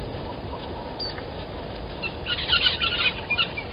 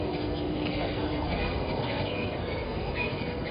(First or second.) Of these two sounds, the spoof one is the second